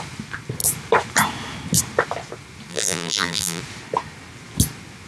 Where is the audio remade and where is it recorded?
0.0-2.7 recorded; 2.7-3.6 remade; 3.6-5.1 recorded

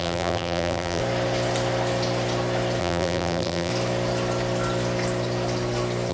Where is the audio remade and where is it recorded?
0.0-1.0 remade; 1.0-2.8 recorded; 2.8-3.7 remade; 3.7-6.1 recorded

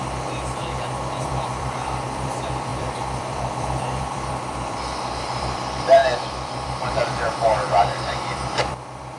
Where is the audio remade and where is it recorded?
0.0-9.2 remade

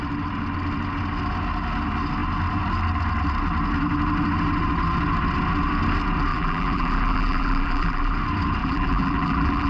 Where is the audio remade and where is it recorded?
0.0-6.3 recorded; 6.3-8.1 remade; 8.1-8.6 recorded; 8.6-9.7 remade